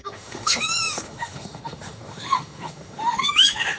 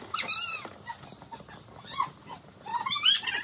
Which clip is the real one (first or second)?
second